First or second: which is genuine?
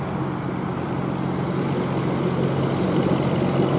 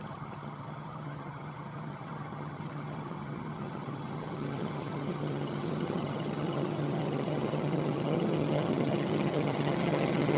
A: first